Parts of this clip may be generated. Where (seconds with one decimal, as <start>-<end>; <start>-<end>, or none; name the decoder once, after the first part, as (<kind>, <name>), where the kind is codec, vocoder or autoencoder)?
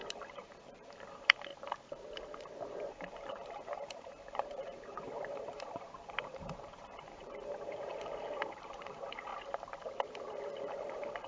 0.0-1.5 (vocoder, BigVGAN v2); 2.9-9.3; 10.6-11.3